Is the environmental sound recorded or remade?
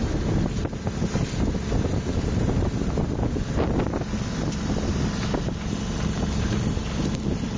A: recorded